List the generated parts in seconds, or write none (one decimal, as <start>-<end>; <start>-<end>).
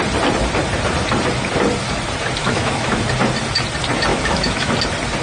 2.4-3.0; 4.1-4.7